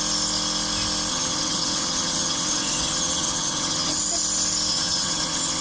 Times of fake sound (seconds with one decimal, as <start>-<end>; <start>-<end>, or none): 1.1-4.0; 4.7-5.6